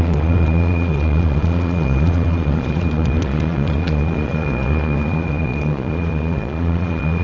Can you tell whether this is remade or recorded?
remade